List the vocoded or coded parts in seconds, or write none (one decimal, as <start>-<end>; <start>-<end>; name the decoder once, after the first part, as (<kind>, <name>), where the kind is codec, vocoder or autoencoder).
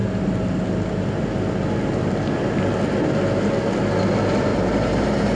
4.5-5.4 (vocoder, BigVGAN v2)